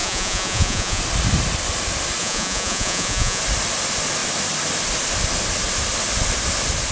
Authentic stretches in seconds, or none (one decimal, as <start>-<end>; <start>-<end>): 1.0-2.2; 3.4-6.9